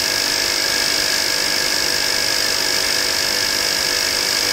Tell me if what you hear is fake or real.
real